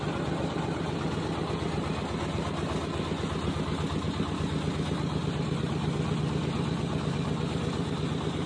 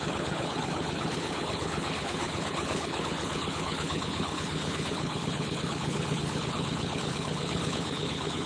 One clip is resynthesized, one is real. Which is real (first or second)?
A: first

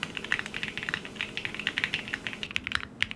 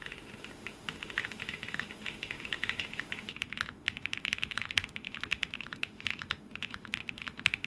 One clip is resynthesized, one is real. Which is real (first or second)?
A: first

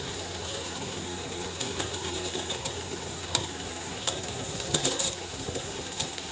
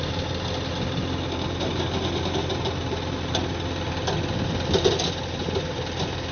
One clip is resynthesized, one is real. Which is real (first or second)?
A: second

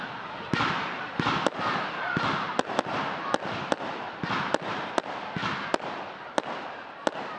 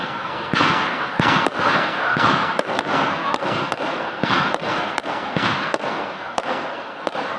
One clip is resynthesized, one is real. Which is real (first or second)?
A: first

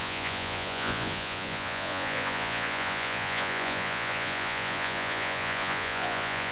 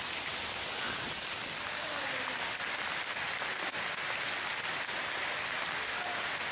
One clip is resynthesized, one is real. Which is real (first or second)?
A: second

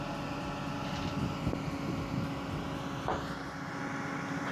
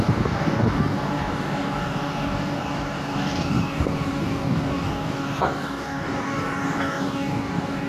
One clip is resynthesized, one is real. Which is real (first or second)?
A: first